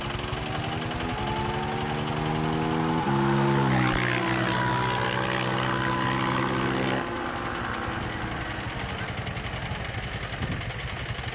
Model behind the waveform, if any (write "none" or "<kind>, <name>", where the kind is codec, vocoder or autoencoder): none